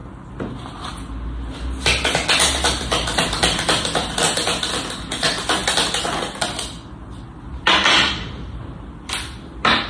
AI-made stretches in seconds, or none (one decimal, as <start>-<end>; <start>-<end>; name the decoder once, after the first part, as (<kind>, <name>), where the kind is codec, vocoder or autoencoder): none